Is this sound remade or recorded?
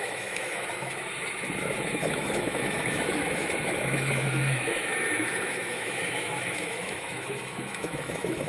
remade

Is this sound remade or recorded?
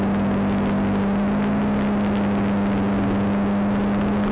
recorded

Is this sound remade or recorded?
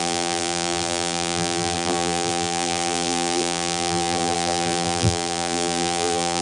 remade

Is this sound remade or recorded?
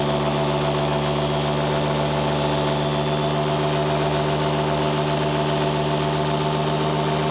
recorded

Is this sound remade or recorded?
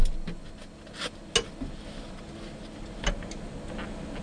recorded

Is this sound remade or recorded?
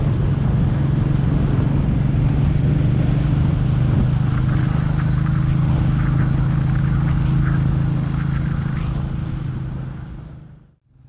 recorded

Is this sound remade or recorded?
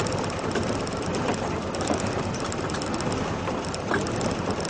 recorded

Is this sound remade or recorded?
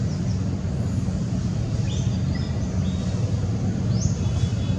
recorded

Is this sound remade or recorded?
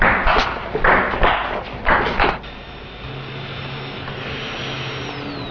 recorded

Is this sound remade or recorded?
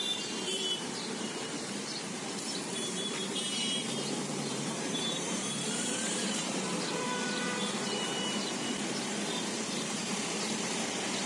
remade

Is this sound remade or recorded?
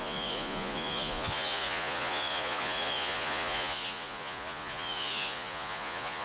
remade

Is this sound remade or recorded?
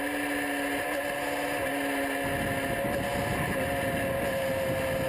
recorded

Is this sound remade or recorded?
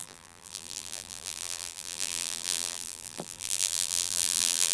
remade